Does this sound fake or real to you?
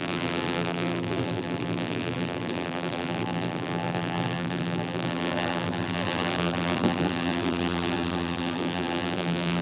fake